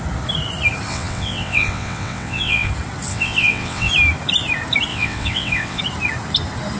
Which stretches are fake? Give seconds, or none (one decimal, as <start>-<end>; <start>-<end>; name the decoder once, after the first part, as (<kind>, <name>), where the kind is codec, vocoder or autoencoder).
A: 0.9-2.7 (vocoder, WaveNeXt); 3.1-3.9; 4.9-5.8